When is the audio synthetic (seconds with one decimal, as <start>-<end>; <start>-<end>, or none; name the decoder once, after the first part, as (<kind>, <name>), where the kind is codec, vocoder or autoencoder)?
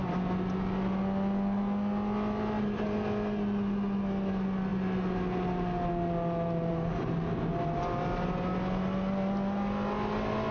none